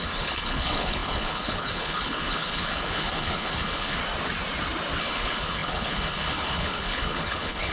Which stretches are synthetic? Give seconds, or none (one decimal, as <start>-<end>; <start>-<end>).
0.0-4.0; 5.0-7.7